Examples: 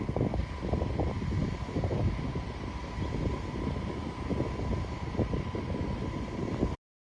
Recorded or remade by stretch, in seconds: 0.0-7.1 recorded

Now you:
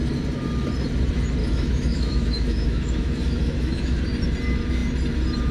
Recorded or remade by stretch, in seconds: 0.0-1.4 recorded; 1.4-4.0 remade; 4.0-5.5 recorded

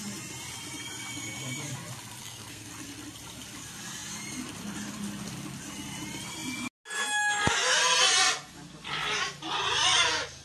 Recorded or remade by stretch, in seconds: 0.0-2.2 recorded; 2.2-2.7 remade; 2.7-10.4 recorded

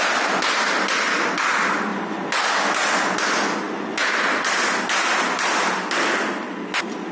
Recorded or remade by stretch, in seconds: 0.0-7.1 recorded

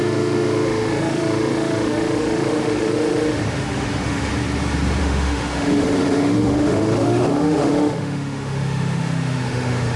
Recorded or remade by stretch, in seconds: 0.0-4.3 remade; 4.3-5.0 recorded; 5.0-10.0 remade

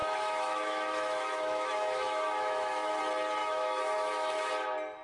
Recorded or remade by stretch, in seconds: 0.0-3.0 remade; 3.0-3.4 recorded; 3.4-4.5 remade; 4.5-5.0 recorded

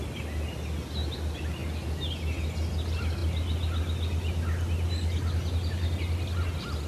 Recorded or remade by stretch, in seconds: 0.0-6.9 recorded

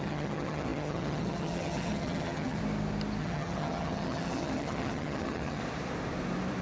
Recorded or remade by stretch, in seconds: 0.0-2.6 remade; 2.6-3.2 recorded; 3.2-5.6 remade; 5.6-6.6 recorded